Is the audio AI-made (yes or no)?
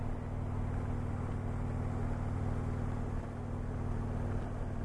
no